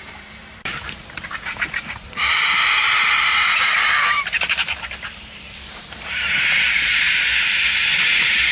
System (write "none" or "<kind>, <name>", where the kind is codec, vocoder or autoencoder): vocoder, BigVGAN v2